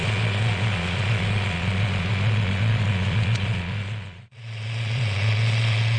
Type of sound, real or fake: fake